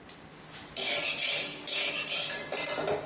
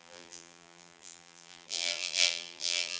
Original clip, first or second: first